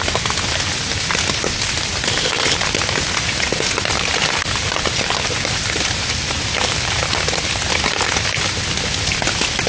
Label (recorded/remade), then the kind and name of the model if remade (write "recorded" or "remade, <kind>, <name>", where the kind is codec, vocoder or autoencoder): recorded